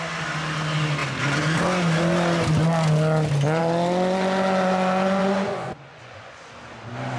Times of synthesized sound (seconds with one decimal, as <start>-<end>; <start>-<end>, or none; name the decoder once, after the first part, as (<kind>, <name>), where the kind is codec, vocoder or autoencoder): 5.2-6.5 (vocoder, Vocos)